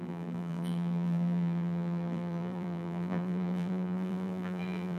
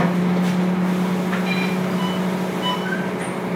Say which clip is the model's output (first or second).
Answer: first